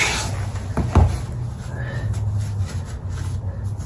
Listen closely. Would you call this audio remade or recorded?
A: recorded